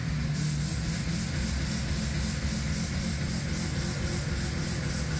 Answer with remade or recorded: recorded